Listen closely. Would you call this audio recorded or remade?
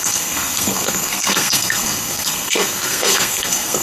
remade